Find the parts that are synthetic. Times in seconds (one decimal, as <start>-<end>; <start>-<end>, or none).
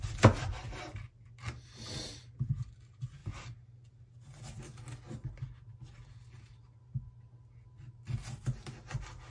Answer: none